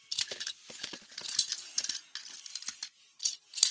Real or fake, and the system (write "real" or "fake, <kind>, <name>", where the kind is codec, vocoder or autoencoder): real